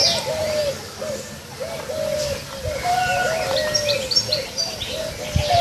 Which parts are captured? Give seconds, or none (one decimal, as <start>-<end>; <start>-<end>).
0.6-5.6